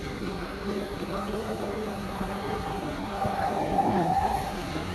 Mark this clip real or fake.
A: fake